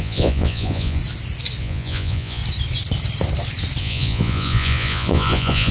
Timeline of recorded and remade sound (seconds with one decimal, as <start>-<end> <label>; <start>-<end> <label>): 0.0-1.0 remade; 1.0-1.6 recorded; 1.6-2.4 remade; 2.4-3.8 recorded; 3.8-5.7 remade